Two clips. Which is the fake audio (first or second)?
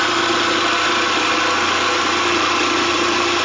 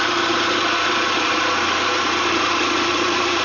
second